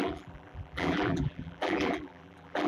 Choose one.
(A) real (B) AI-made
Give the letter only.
B